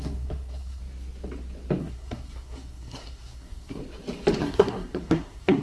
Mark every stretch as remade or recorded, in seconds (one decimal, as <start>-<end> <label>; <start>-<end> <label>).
0.0-0.8 remade; 0.8-1.8 recorded; 1.8-3.8 remade; 3.8-4.4 recorded; 4.4-5.6 remade